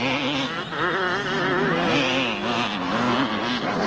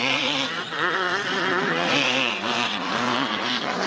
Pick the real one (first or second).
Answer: first